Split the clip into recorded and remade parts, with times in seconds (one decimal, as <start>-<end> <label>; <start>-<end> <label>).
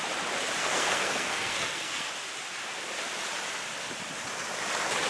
0.0-0.6 recorded; 0.6-2.1 remade; 2.1-5.1 recorded